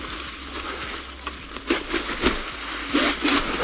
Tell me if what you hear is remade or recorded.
recorded